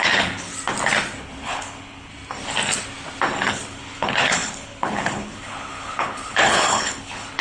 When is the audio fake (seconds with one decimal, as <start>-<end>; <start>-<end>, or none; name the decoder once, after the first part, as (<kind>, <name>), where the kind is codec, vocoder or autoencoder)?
0.0-0.5 (codec, HILCodec); 1.2-2.1; 3.5-7.4